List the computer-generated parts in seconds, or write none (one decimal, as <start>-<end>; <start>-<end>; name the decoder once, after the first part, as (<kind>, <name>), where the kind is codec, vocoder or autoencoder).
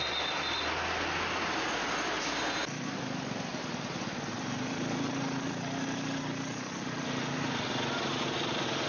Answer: none